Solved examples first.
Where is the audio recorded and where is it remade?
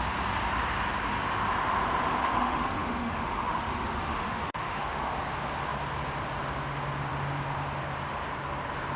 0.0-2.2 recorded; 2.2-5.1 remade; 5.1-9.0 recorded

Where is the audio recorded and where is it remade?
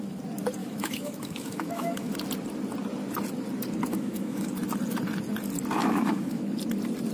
0.0-0.6 recorded; 0.6-2.1 remade; 2.1-3.9 recorded; 3.9-4.5 remade; 4.5-5.8 recorded; 5.8-6.4 remade; 6.4-7.1 recorded